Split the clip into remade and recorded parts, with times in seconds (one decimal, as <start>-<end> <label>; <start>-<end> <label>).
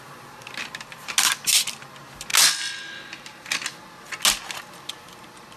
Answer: 0.0-5.6 recorded